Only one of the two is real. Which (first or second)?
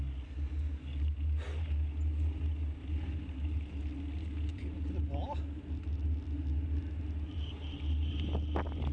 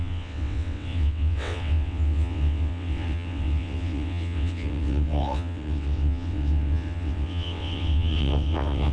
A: first